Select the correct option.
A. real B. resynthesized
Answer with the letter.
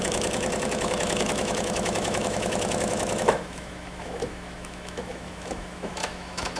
B